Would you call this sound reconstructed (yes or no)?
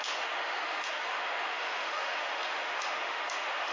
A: yes